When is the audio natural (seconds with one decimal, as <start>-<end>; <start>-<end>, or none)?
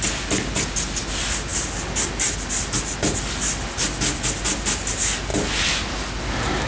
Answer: 0.0-6.7